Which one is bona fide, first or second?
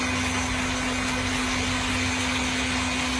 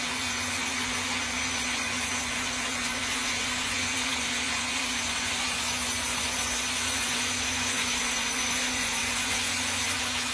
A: first